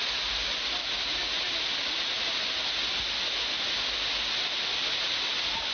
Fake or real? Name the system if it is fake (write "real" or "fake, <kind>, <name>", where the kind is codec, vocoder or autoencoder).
real